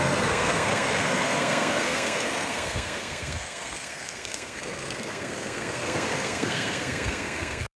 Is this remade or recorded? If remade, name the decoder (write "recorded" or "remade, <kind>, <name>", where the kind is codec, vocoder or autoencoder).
remade, codec, SNAC